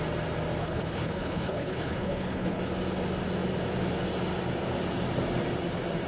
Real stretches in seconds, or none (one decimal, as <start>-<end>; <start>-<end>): 0.0-0.6; 2.6-6.1